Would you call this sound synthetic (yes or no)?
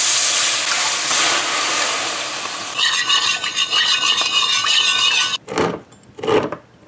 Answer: no